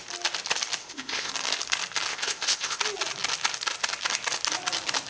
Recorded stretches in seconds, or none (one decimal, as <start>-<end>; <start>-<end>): 0.0-0.8; 1.3-2.1; 2.8-5.1